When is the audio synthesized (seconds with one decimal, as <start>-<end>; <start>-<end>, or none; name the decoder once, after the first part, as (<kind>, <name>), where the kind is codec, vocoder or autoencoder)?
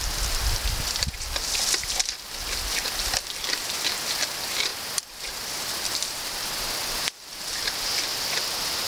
4.7-7.8 (vocoder, BigVGAN v2)